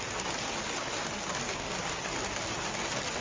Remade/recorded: recorded